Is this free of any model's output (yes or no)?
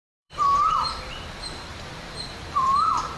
no